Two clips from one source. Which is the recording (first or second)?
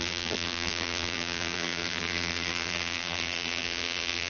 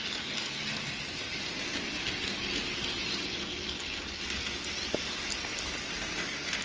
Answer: second